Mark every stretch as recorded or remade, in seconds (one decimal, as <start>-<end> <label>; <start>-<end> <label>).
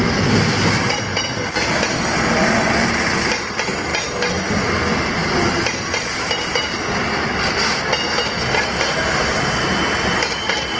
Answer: 0.0-10.8 recorded